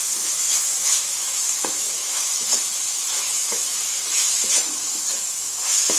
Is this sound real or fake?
fake